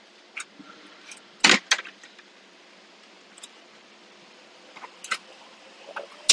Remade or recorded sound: recorded